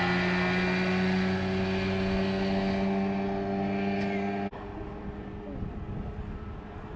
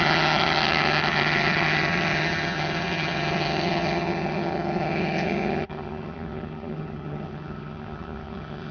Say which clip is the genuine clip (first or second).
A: first